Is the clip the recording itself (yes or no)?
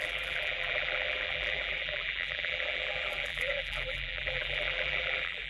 no